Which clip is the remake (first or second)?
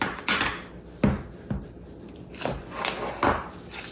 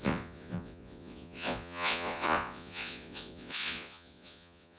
second